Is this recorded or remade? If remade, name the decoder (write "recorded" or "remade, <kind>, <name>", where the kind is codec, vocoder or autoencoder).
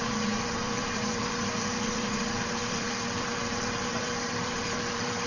remade, vocoder, BigVGAN v2